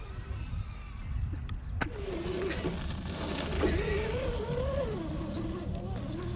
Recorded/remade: recorded